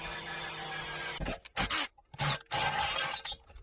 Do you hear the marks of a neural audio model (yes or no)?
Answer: no